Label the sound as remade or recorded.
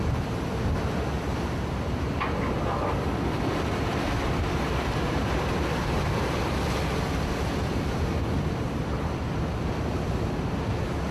recorded